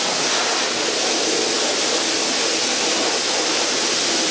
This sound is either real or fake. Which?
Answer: real